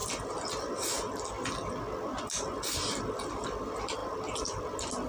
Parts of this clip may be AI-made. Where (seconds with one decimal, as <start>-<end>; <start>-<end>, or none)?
none